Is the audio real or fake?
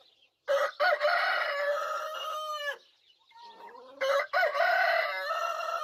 real